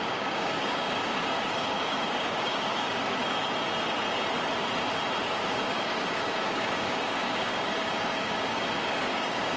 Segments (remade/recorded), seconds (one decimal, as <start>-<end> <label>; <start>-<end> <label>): 0.0-3.4 remade; 3.4-5.2 recorded; 5.2-9.6 remade